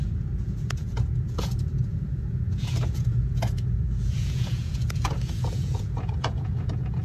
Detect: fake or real fake